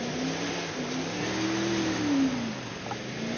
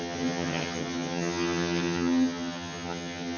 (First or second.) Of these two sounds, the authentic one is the first